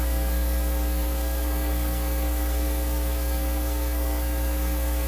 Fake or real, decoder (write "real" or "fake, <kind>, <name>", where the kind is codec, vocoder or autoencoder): fake, codec, SNAC